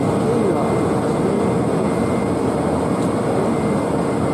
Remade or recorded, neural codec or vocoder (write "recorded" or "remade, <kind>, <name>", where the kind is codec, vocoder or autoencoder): recorded